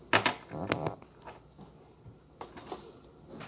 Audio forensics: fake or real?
real